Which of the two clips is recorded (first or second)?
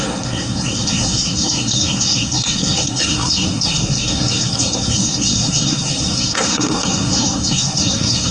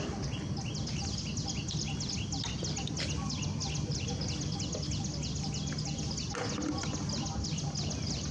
second